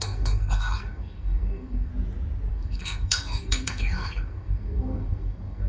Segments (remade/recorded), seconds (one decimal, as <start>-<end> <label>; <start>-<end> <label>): 0.0-1.9 remade; 1.9-2.5 recorded; 2.5-5.7 remade